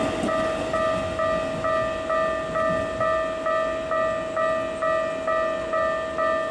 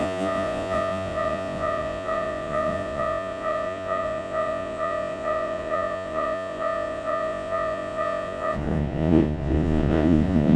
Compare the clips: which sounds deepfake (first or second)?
second